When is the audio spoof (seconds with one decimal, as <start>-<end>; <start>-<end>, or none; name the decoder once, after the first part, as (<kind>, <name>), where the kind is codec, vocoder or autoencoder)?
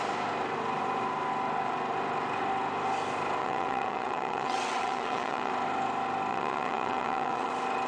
3.4-5.5 (vocoder, WaveNeXt); 6.3-7.5